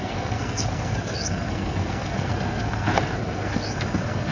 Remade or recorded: remade